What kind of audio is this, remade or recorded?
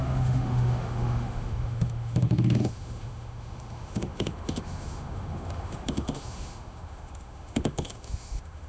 remade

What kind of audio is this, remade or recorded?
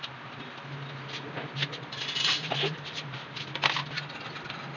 recorded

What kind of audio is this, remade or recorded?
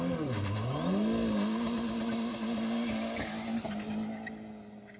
recorded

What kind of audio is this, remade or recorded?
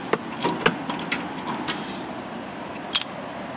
recorded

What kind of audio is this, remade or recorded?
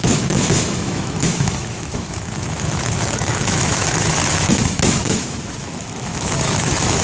remade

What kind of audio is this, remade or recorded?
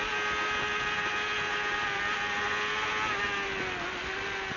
recorded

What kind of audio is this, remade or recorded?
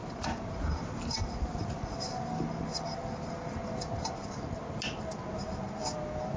recorded